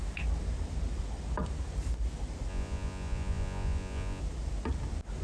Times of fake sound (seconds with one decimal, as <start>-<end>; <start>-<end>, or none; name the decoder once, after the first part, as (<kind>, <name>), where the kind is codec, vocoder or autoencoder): 2.5-4.2 (vocoder, Vocos)